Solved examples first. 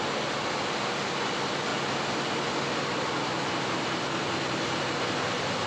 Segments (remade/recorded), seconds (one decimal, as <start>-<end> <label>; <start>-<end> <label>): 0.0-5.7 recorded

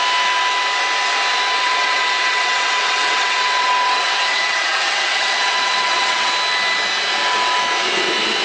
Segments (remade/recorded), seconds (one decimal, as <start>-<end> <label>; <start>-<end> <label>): 0.0-1.5 recorded; 1.5-6.3 remade; 6.3-8.4 recorded

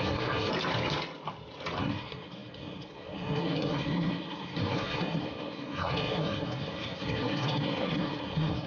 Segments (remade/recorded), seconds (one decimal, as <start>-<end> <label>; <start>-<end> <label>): 0.0-0.5 remade; 0.5-1.8 recorded; 1.8-8.7 remade

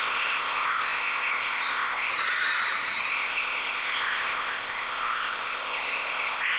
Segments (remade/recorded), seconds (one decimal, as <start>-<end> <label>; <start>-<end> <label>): 0.0-2.1 remade; 2.1-3.1 recorded; 3.1-6.6 remade

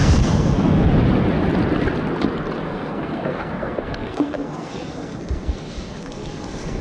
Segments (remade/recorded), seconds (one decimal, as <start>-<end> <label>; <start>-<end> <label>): 0.0-0.9 remade; 0.9-2.6 recorded; 2.6-6.8 remade